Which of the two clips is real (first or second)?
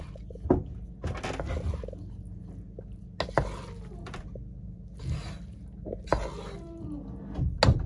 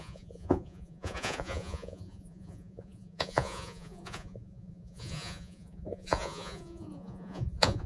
first